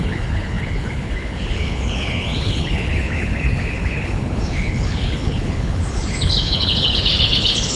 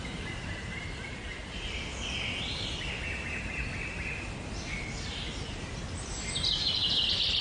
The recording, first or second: second